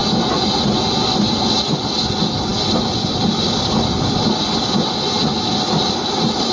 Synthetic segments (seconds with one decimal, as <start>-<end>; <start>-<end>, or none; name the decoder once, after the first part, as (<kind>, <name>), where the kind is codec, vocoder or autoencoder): 2.5-5.2 (vocoder, BigVGAN v2)